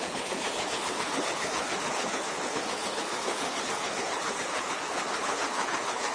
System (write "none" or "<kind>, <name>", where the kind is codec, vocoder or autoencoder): codec, HILCodec